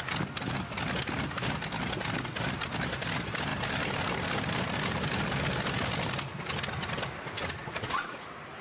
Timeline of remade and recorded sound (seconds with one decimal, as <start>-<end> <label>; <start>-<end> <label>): 0.0-7.4 recorded; 7.4-8.6 remade